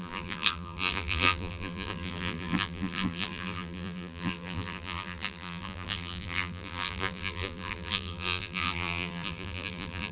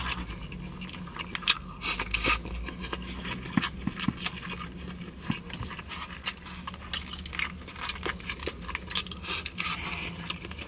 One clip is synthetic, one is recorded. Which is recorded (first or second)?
second